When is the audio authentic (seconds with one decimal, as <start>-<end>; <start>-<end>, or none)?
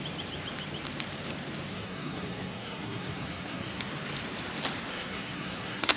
0.0-1.7; 3.9-4.9